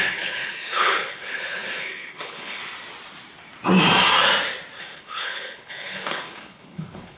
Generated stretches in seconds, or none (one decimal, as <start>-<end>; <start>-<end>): 0.0-2.6; 4.8-7.2